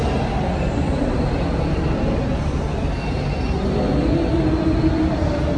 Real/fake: real